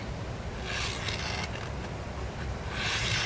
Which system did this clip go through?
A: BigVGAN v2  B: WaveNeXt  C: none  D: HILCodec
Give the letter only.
C